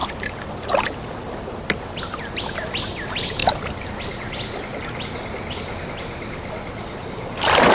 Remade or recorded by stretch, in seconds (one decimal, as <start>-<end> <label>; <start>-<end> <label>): 0.0-7.7 recorded